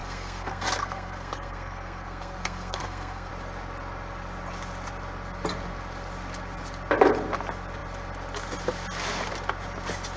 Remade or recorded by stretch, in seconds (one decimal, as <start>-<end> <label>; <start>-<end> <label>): 0.0-3.3 remade; 3.3-10.2 recorded

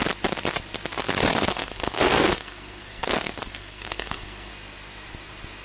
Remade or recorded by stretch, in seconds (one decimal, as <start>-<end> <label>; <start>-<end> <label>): 0.0-1.3 recorded; 1.3-4.5 remade; 4.5-5.6 recorded